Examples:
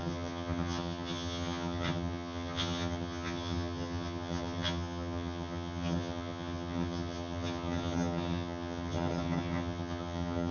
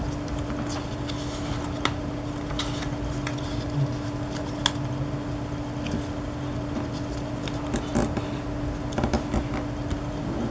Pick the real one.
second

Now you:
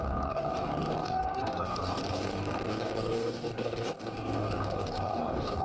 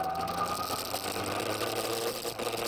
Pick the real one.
second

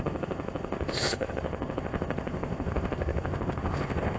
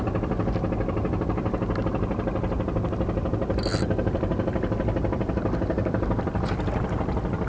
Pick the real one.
second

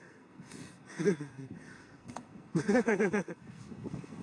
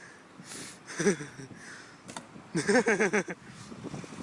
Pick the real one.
second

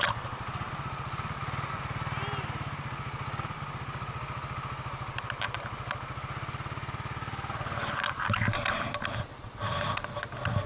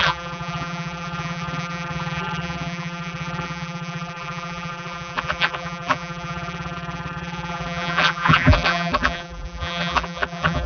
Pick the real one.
first